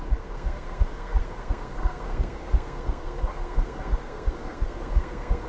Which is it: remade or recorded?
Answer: remade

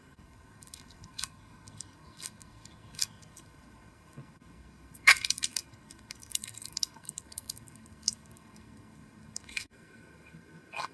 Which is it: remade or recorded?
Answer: remade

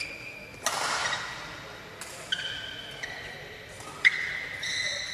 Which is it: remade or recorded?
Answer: recorded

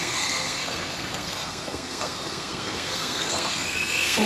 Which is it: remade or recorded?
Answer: remade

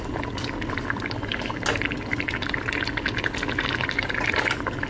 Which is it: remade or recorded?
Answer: recorded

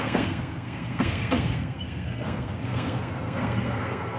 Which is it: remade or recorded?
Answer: remade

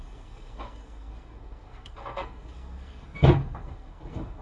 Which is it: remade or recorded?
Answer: remade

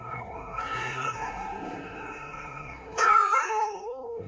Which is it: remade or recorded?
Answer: remade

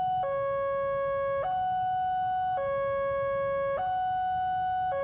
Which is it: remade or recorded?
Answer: recorded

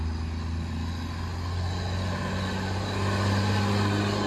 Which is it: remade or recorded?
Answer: recorded